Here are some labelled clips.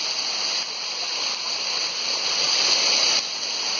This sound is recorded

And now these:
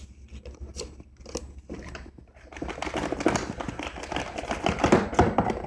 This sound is recorded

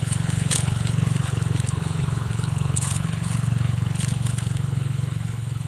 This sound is remade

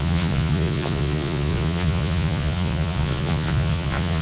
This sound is remade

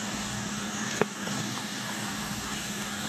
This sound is remade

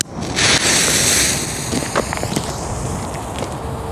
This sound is recorded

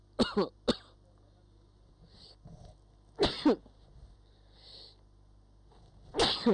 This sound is recorded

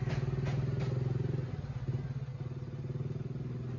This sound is recorded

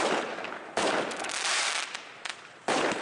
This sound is remade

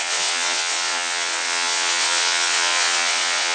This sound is remade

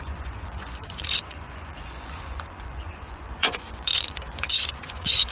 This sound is remade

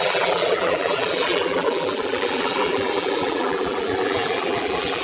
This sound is remade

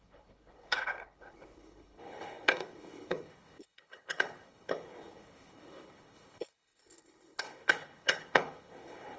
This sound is remade